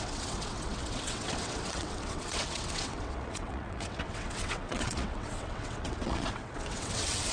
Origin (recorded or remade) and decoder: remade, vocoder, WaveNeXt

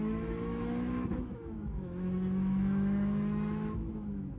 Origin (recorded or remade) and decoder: remade, autoencoder, DAC-VAE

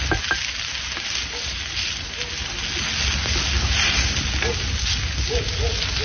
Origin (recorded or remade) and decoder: recorded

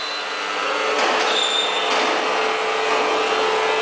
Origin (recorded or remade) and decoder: recorded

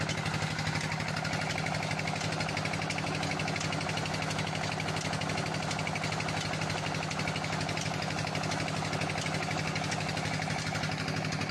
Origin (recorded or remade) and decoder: recorded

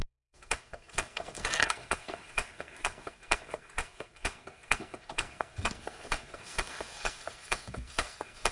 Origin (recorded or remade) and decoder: remade, codec, SNAC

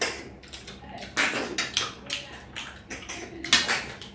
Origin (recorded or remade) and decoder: recorded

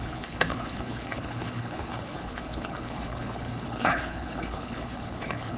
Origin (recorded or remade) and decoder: remade, codec, HILCodec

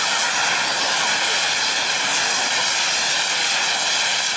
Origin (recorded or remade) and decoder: recorded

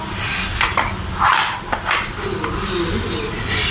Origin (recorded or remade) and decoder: recorded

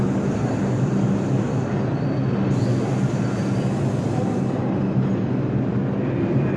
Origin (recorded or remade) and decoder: recorded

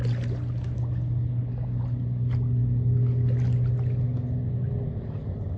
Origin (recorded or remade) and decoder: recorded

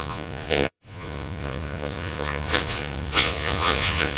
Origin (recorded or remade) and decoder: remade, vocoder, Vocos